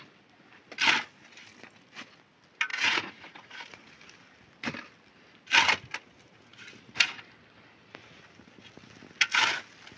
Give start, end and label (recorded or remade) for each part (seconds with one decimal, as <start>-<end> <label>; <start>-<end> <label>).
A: 0.0-2.7 recorded; 2.7-3.9 remade; 3.9-10.0 recorded